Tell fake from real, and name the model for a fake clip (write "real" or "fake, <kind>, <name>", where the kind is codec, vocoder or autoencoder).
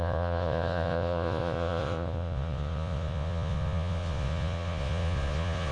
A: fake, vocoder, Vocos